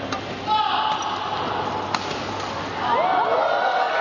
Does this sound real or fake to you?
real